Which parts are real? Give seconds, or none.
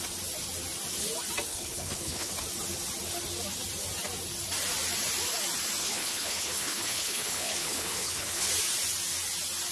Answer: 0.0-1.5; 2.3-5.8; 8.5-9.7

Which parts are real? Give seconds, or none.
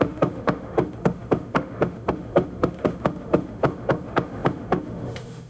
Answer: none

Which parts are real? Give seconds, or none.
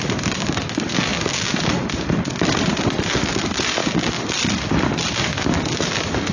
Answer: 0.0-6.3